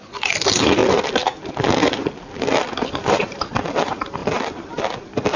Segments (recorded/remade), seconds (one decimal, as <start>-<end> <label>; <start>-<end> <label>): 0.0-0.8 remade; 0.8-2.4 recorded; 2.4-4.2 remade; 4.2-5.4 recorded